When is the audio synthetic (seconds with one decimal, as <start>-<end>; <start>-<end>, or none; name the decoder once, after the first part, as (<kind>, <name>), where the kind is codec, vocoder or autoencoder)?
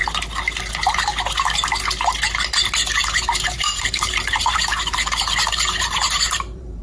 3.0-6.8 (vocoder, BigVGAN v2)